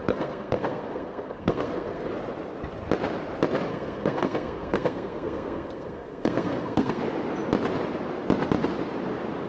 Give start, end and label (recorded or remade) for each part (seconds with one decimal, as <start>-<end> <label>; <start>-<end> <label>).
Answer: 0.0-2.1 remade; 2.1-3.7 recorded; 3.7-7.0 remade; 7.0-9.5 recorded